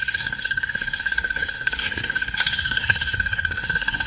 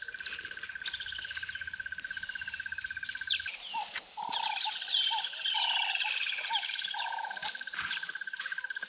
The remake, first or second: first